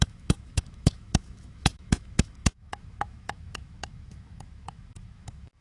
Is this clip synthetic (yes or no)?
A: yes